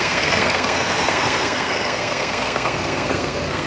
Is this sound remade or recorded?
remade